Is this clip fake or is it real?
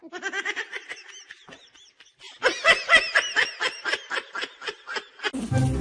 real